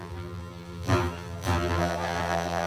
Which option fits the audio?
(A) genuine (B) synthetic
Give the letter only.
B